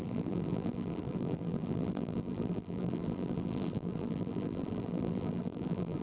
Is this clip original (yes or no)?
no